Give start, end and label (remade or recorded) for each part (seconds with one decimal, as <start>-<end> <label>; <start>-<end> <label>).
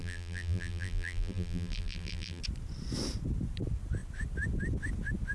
0.0-2.4 remade; 2.4-5.3 recorded